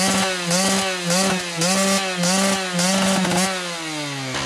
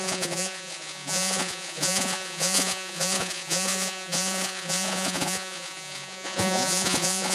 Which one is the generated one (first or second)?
second